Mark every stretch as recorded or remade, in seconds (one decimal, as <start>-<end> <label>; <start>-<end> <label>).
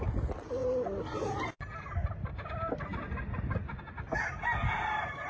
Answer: 0.0-5.3 recorded